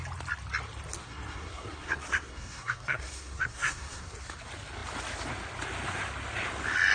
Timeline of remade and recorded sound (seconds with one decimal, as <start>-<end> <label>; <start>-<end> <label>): 0.0-1.0 recorded; 1.0-4.1 remade; 4.1-6.9 recorded